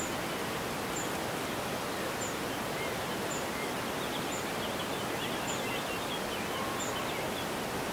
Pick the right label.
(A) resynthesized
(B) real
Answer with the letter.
B